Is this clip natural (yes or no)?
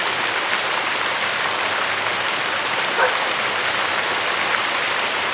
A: yes